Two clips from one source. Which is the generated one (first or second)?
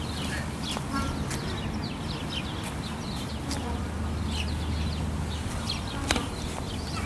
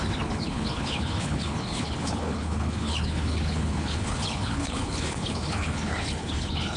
second